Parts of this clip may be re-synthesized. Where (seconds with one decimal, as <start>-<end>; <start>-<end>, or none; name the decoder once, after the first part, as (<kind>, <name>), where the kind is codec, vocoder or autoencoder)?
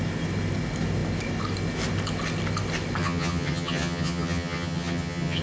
3.0-5.4 (vocoder, HiFi-GAN)